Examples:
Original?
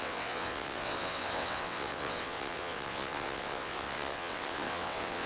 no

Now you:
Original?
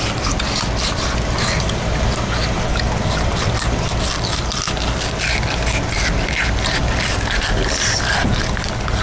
yes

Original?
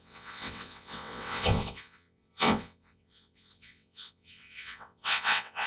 no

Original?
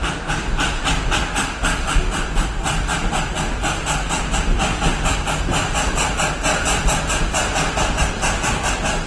yes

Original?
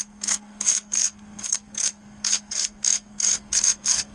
no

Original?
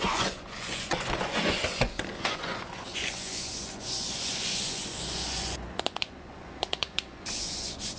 no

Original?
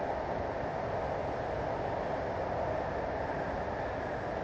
yes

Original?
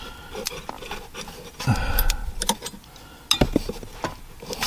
yes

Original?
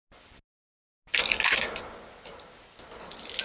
yes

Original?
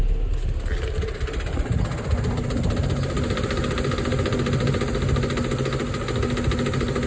yes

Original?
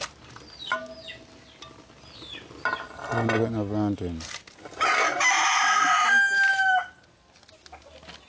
yes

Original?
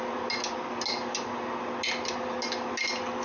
yes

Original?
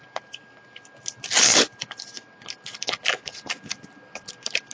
yes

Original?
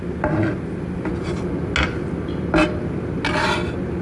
yes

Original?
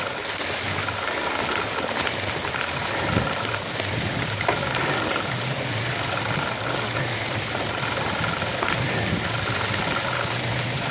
yes